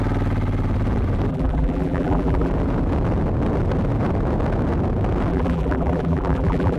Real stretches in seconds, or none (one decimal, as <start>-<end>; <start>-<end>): 0.0-1.3; 2.5-5.3